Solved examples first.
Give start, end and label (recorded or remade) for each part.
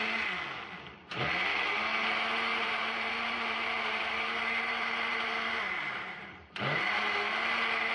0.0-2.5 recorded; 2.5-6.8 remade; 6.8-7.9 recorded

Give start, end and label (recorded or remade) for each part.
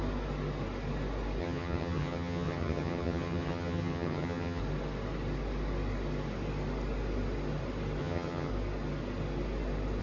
0.0-1.4 recorded; 1.4-4.6 remade; 4.6-8.0 recorded; 8.0-8.5 remade; 8.5-10.0 recorded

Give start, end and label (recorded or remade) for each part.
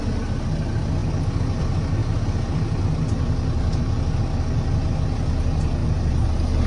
0.0-6.7 recorded